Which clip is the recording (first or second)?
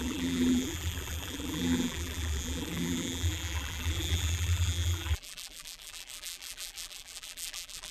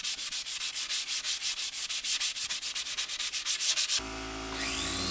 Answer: second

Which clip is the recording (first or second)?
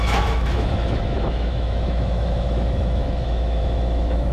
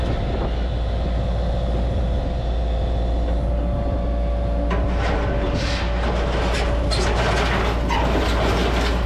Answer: second